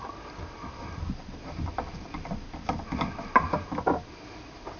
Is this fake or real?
real